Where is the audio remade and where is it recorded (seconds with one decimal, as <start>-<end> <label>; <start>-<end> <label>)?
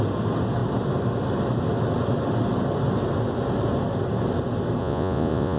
0.0-4.8 recorded; 4.8-5.6 remade